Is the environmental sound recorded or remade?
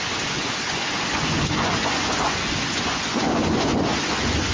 remade